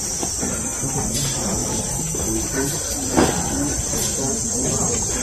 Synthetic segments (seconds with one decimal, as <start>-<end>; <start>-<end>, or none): 0.0-1.6; 4.4-5.2